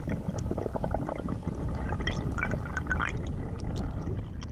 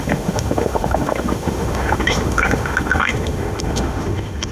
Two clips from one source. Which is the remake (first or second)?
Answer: second